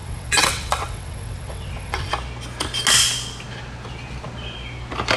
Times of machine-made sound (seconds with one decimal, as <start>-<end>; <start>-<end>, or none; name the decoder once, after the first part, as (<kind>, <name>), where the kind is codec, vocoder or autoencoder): 0.0-2.1 (vocoder, WaveNeXt)